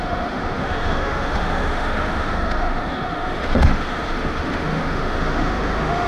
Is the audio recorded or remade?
remade